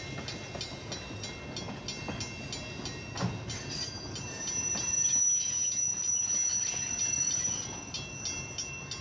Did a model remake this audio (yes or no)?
no